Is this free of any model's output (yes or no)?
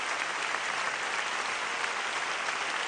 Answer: yes